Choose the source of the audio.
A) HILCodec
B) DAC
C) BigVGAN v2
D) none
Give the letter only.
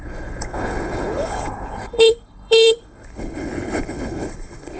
A